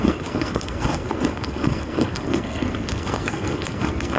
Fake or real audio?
fake